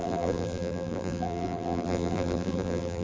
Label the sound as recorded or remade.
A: remade